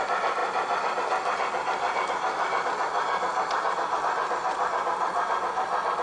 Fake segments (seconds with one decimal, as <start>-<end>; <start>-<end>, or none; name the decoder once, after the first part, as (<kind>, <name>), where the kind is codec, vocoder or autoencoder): none